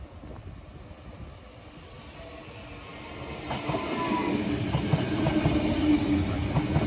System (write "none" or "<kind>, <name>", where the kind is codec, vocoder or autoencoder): none